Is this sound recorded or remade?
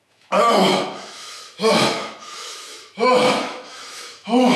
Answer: remade